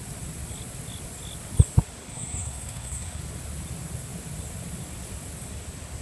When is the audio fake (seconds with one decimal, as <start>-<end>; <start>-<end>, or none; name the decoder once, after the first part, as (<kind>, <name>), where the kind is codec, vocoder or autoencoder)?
2.1-3.2 (codec, SNAC)